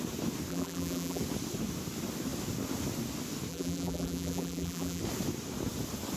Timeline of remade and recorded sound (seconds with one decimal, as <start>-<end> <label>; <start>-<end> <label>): 0.0-0.5 recorded; 0.5-1.2 remade; 1.2-3.5 recorded; 3.5-5.0 remade; 5.0-6.2 recorded